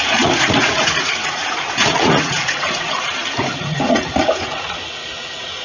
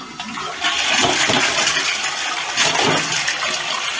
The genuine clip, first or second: second